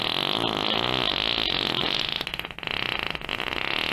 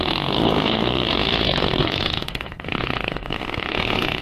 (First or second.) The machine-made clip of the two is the second